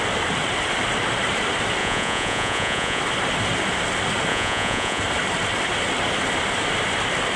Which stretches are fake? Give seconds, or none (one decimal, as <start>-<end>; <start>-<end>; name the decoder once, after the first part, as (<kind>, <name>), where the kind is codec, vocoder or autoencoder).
1.8-3.0 (vocoder, Vocos); 4.3-5.0

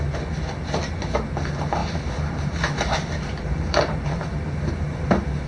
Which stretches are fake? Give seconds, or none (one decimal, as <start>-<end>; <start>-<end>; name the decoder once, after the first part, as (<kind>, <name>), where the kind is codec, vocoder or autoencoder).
1.8-5.1 (vocoder, BigVGAN v2)